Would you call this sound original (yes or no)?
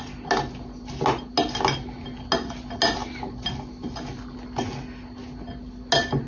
yes